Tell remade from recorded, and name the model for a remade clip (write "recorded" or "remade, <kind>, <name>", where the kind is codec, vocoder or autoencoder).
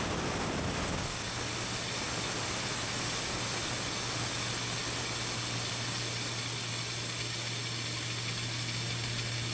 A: recorded